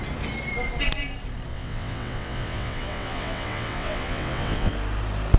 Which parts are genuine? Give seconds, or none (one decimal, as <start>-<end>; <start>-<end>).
0.0-1.5; 4.7-5.4